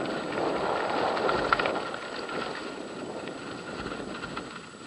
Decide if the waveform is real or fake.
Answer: real